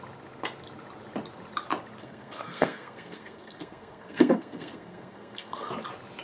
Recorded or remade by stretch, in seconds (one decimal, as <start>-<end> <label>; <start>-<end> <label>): 0.0-2.0 recorded; 2.0-5.7 remade; 5.7-6.2 recorded